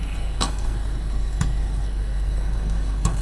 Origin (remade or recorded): remade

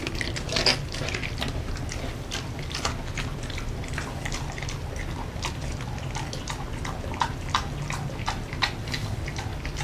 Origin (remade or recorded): recorded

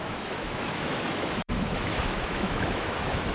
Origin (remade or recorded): remade